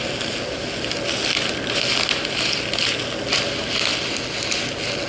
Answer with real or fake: real